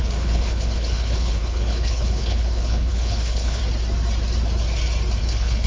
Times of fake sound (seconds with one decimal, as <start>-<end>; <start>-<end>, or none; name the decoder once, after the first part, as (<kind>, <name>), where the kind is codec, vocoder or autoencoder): 0.0-3.6 (codec, HILCodec); 5.2-5.7